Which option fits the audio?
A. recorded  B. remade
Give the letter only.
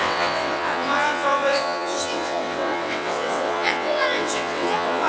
B